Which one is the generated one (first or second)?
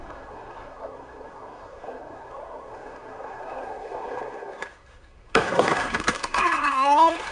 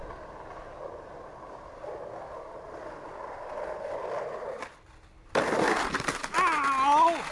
first